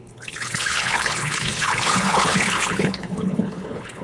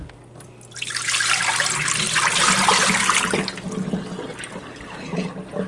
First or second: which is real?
second